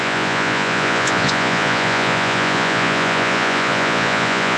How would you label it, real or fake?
fake